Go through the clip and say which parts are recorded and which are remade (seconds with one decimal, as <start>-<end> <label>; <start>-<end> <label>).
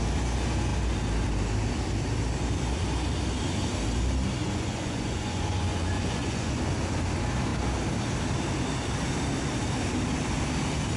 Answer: 0.0-4.4 recorded; 4.4-6.6 remade; 6.6-11.0 recorded